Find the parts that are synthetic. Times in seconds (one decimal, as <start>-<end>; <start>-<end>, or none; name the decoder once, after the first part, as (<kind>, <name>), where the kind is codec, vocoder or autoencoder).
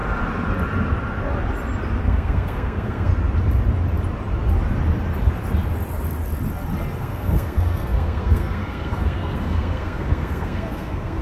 2.0-3.1 (codec, SNAC); 7.0-11.2